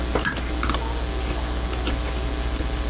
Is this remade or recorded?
recorded